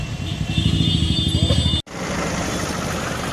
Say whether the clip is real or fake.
real